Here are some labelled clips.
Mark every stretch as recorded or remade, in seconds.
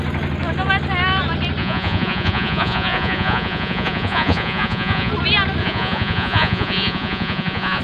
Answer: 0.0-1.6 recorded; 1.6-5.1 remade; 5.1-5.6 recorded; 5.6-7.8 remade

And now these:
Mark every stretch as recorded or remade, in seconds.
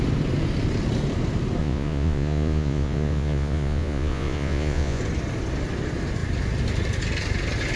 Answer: 0.0-1.6 recorded; 1.6-5.0 remade; 5.0-7.8 recorded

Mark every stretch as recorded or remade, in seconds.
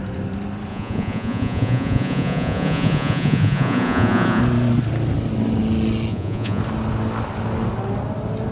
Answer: 0.0-0.7 recorded; 0.7-4.4 remade; 4.4-6.1 recorded; 6.1-6.6 remade; 6.6-8.5 recorded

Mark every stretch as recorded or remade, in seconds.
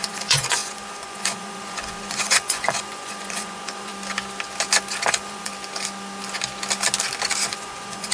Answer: 0.0-3.9 remade; 3.9-5.1 recorded; 5.1-5.5 remade; 5.5-7.5 recorded; 7.5-8.1 remade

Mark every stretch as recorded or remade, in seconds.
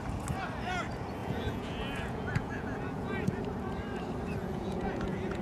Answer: 0.0-1.2 recorded; 1.2-3.4 remade; 3.4-4.4 recorded; 4.4-5.4 remade